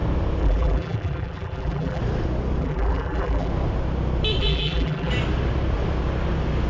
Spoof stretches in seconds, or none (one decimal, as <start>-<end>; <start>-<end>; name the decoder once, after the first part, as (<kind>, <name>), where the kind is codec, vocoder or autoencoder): 0.4-2.0 (vocoder, BigVGAN v2); 2.6-3.5; 4.4-5.1